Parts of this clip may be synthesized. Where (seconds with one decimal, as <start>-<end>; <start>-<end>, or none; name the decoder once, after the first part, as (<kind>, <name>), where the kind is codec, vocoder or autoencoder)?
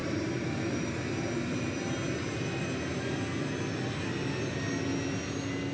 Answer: 0.0-3.4 (vocoder, BigVGAN v2)